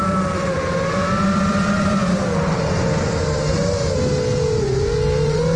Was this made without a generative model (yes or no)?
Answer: yes